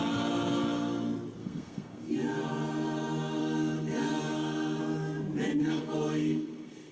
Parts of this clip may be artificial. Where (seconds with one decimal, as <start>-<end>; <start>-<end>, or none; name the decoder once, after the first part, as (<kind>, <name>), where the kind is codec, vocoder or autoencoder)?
1.4-2.1 (codec, SNAC); 3.4-4.8; 5.6-6.9